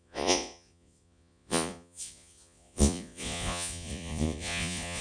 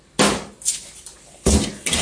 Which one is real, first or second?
second